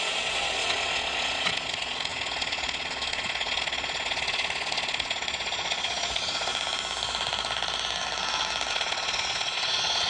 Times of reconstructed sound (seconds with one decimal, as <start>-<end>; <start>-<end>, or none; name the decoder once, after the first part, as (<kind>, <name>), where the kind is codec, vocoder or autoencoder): 0.0-6.5 (vocoder, Vocos); 8.7-10.1